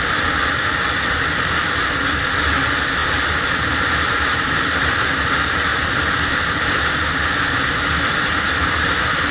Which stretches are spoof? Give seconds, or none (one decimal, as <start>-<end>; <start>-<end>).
none